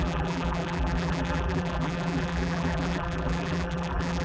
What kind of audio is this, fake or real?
fake